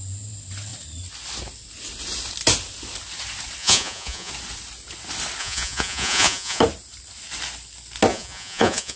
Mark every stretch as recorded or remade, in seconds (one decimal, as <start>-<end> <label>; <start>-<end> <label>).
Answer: 0.0-3.6 recorded; 3.6-4.3 remade; 4.3-5.4 recorded; 5.4-6.6 remade; 6.6-8.1 recorded; 8.1-9.0 remade